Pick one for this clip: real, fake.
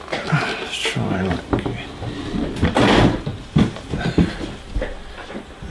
real